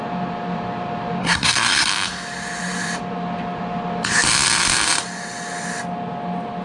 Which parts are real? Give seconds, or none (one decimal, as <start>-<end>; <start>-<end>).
0.0-1.2; 1.9-6.6